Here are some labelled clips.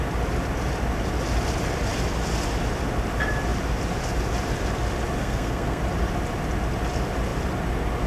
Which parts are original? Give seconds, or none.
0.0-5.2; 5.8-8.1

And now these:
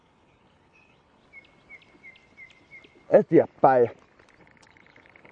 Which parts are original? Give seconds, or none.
1.2-4.4

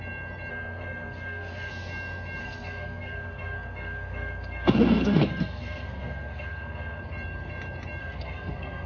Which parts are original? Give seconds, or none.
0.0-0.5; 1.7-2.4; 7.0-8.0

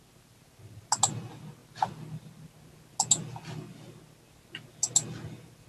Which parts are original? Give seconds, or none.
0.0-5.7

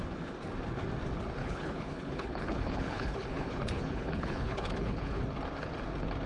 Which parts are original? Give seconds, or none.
0.0-1.4; 5.2-6.3

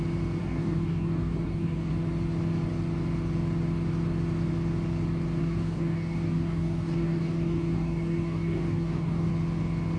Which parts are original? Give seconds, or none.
0.0-0.4; 1.9-5.4; 9.3-10.0